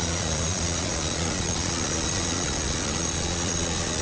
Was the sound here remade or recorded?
remade